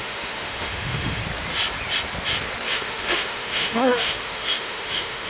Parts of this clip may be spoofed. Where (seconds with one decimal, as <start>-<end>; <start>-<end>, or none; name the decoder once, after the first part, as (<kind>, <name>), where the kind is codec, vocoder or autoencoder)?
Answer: 0.0-1.2 (autoencoder, DAC-VAE); 2.7-5.3